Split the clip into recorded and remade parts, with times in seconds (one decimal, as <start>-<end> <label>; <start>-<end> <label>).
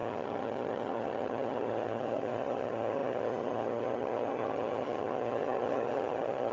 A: 0.0-6.5 remade